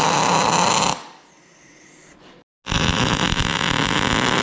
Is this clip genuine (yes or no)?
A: yes